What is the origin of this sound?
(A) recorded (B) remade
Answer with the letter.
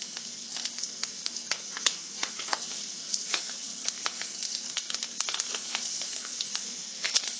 B